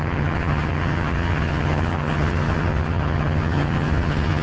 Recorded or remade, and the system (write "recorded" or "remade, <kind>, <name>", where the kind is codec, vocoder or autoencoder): remade, vocoder, HiFi-GAN